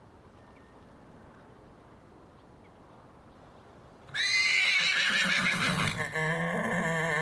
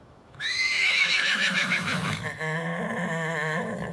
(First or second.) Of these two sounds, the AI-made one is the second